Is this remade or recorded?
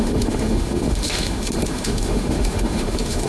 remade